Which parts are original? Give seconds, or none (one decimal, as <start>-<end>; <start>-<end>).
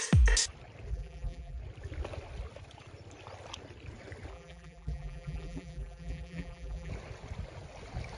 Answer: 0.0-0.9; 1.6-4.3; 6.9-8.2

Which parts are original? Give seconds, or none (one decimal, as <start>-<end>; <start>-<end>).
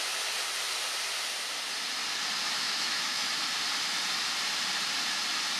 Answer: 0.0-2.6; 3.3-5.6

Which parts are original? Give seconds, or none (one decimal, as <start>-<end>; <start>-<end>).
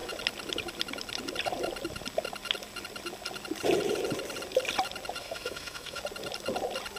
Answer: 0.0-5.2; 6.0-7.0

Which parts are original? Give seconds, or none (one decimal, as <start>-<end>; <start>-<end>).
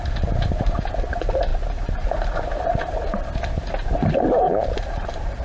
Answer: none